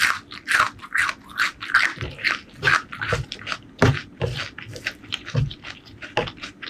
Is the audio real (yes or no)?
yes